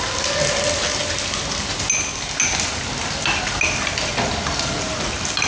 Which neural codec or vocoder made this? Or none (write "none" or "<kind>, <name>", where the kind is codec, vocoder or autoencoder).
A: none